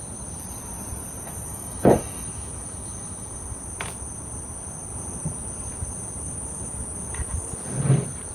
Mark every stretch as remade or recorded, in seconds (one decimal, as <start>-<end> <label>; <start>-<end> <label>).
0.0-1.5 recorded; 1.5-3.6 remade; 3.6-8.3 recorded